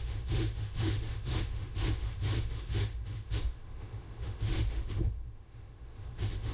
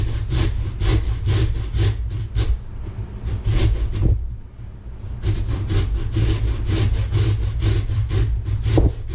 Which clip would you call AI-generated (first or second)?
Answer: first